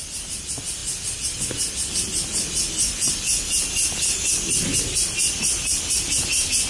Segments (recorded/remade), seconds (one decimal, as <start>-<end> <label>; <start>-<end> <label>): 0.0-6.7 recorded